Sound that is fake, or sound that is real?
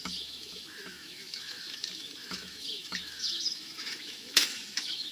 fake